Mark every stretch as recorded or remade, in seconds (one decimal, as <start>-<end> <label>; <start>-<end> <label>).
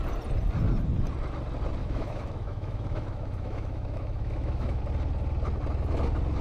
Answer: 0.0-1.8 recorded; 1.8-4.8 remade; 4.8-6.4 recorded